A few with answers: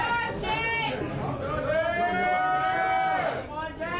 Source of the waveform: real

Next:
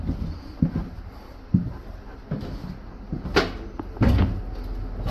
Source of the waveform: real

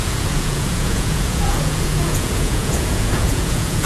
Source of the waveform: fake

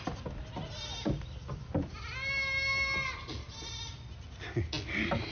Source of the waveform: real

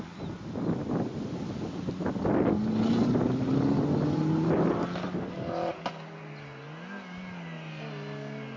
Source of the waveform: real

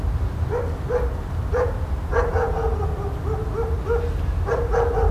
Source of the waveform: real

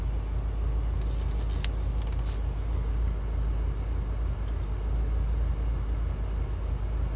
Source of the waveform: real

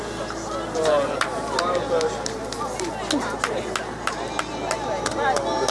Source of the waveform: real